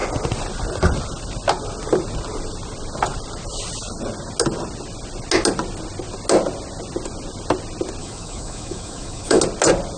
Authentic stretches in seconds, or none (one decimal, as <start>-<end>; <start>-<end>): 0.0-8.0; 9.4-10.0